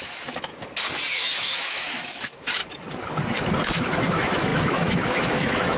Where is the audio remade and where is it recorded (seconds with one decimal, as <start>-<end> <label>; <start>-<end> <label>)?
0.0-0.5 remade; 0.5-1.1 recorded; 1.1-2.6 remade; 2.6-3.8 recorded; 3.8-5.8 remade